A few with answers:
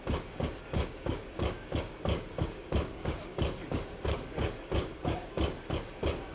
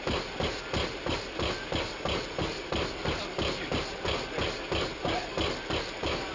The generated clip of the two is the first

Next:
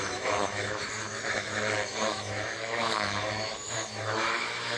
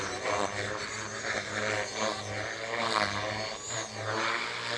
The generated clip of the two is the first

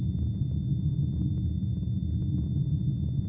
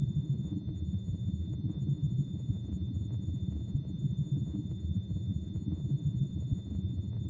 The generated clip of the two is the second